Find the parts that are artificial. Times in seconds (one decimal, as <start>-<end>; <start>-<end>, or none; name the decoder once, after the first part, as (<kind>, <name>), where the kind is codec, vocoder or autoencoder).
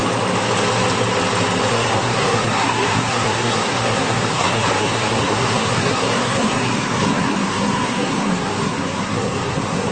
1.7-9.9 (codec, SNAC)